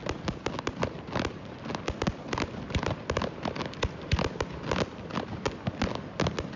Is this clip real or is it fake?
real